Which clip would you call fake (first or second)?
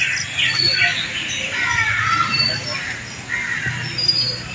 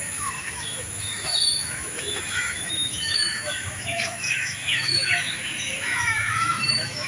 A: second